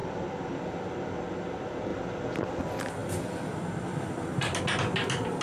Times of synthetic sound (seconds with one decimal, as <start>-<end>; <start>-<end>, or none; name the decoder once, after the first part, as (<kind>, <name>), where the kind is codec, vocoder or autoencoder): 0.0-0.8 (vocoder, BigVGAN v2); 3.0-4.6